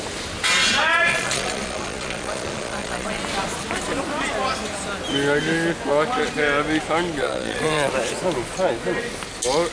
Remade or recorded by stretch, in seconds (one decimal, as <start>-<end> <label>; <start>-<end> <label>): 0.0-1.1 recorded; 1.1-3.2 remade; 3.2-7.2 recorded; 7.2-7.9 remade; 7.9-9.7 recorded